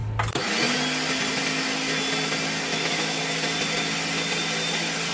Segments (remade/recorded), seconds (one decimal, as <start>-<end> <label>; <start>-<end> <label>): 0.0-2.7 recorded; 2.7-3.2 remade; 3.2-5.1 recorded